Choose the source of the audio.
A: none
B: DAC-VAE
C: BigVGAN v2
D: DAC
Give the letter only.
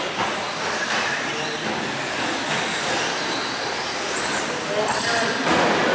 A